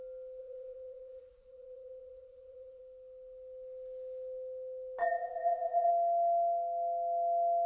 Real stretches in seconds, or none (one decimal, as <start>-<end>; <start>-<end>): 0.0-0.4; 2.8-5.0; 5.9-7.7